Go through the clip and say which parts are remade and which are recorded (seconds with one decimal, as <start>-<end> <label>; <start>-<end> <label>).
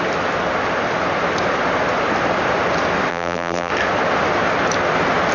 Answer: 0.0-3.1 recorded; 3.1-3.7 remade; 3.7-5.3 recorded